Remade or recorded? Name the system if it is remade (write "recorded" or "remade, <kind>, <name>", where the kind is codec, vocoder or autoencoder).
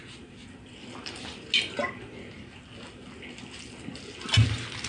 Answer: recorded